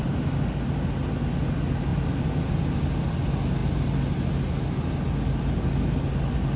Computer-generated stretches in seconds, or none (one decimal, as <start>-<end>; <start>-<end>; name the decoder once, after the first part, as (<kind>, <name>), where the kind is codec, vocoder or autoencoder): none